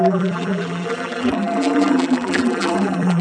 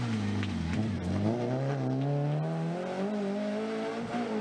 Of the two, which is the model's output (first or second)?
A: first